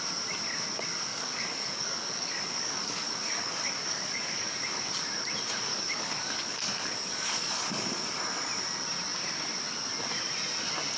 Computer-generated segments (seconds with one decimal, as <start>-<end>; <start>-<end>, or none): 1.1-4.9; 5.7-8.2